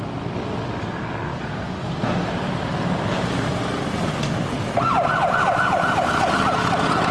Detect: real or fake real